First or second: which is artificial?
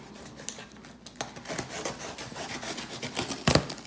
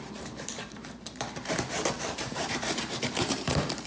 second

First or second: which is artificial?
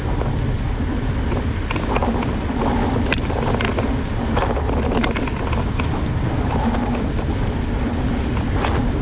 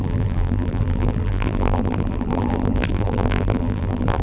second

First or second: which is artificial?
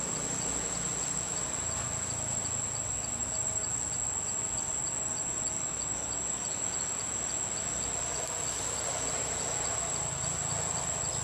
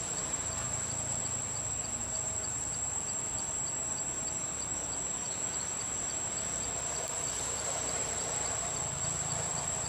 second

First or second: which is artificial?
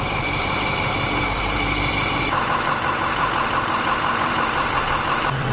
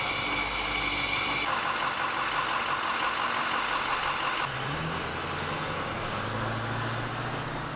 first